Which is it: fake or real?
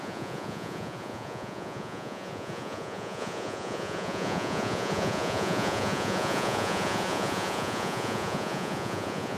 fake